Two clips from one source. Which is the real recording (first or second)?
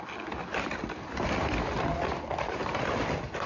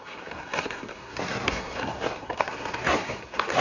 first